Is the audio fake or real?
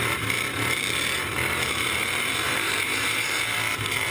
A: fake